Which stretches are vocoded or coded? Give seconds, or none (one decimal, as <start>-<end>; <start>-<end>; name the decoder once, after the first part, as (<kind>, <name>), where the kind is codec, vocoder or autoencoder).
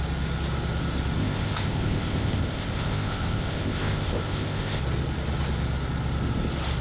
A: 1.2-4.8 (codec, ZipCodec)